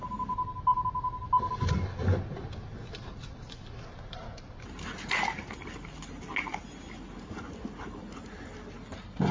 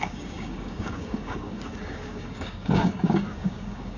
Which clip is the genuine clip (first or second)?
first